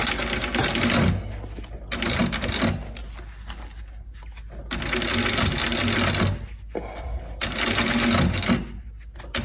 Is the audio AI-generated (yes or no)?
no